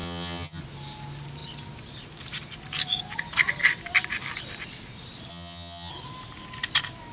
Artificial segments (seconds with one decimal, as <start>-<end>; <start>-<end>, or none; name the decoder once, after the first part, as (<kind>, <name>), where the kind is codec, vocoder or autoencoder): 0.0-0.6 (vocoder, HiFi-GAN); 5.3-5.9